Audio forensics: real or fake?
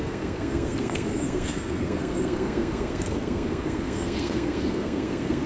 fake